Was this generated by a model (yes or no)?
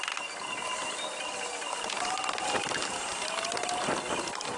yes